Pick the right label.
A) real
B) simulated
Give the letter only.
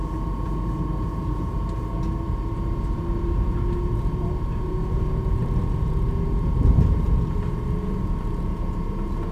A